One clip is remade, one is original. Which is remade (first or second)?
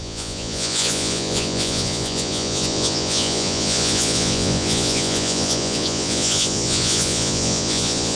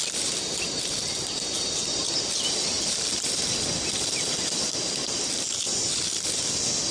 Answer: first